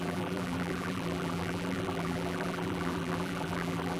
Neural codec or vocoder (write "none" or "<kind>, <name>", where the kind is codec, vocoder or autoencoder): vocoder, BigVGAN v2